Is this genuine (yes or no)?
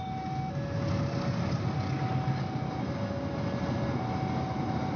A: yes